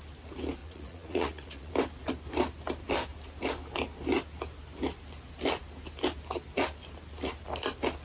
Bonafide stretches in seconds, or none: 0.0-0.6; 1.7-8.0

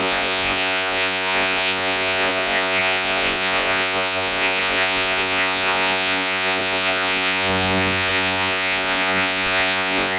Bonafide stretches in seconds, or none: none

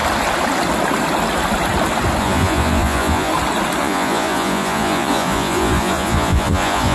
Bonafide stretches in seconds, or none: 0.0-2.2; 3.3-3.8

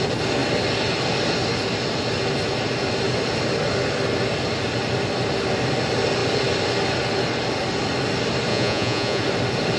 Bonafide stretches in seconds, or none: 0.0-8.5; 9.2-9.8

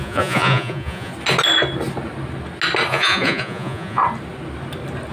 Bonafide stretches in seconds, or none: 1.1-2.9; 4.0-5.1

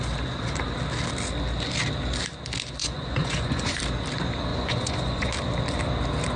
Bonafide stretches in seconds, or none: 0.0-2.8; 3.8-4.5; 5.3-6.4